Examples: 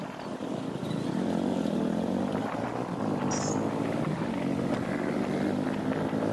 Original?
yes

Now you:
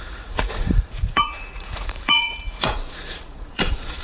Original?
no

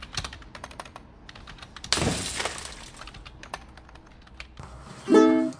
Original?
yes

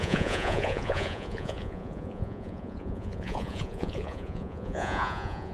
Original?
no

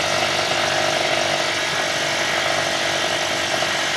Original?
yes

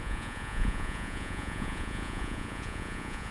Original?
no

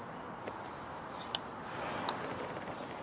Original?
yes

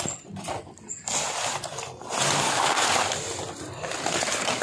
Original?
yes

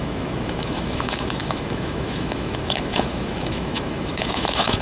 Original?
no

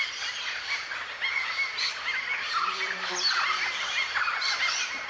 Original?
yes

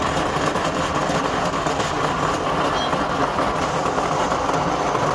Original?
yes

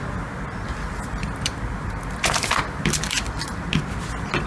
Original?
yes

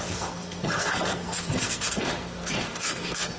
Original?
no